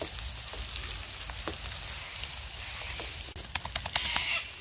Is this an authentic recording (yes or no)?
yes